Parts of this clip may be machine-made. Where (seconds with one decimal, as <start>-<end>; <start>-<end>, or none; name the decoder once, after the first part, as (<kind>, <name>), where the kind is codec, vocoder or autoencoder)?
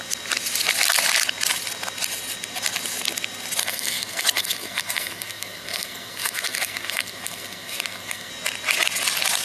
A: 3.6-8.3 (codec, SNAC)